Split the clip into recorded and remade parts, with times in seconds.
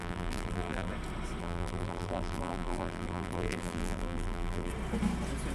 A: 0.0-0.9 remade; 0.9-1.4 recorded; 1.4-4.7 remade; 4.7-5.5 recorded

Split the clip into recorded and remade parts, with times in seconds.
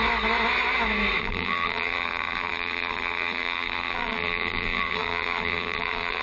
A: 0.0-1.2 recorded; 1.2-6.2 remade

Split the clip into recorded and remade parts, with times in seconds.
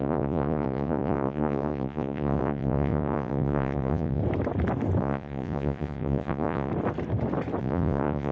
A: 0.0-4.2 remade; 4.2-5.0 recorded; 5.0-6.7 remade; 6.7-7.6 recorded; 7.6-8.3 remade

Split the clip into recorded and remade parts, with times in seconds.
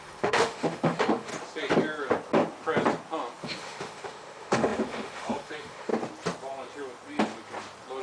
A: 0.0-1.3 remade; 1.3-3.4 recorded; 3.4-5.9 remade; 5.9-8.0 recorded